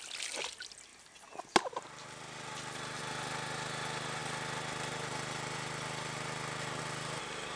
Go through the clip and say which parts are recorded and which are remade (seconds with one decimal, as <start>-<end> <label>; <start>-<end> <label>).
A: 0.0-7.6 recorded